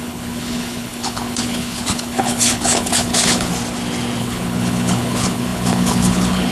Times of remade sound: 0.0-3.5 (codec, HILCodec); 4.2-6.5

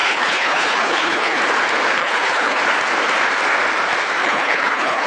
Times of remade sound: 0.0-1.4 (codec, HILCodec); 2.0-2.6; 4.2-5.1

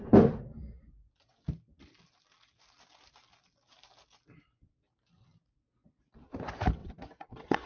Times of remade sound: 6.8-7.7 (vocoder, WaveNeXt)

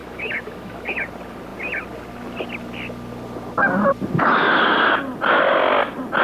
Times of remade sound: 0.0-1.0 (autoencoder, DAC-VAE)

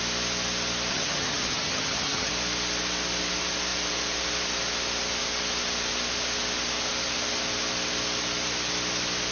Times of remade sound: 0.9-2.3 (vocoder, HiFi-GAN)